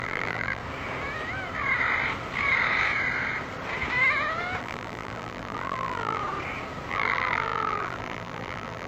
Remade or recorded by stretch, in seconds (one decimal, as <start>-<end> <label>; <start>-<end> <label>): 0.0-0.6 remade; 0.6-4.6 recorded; 4.6-6.2 remade; 6.2-6.9 recorded; 6.9-8.9 remade